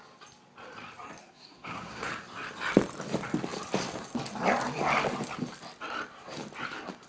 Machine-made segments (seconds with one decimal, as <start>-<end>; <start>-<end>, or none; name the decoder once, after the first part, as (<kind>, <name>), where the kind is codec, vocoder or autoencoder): 1.2-2.1 (codec, SNAC)